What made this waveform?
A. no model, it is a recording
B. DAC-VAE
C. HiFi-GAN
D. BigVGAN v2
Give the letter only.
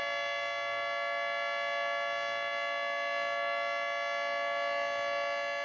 A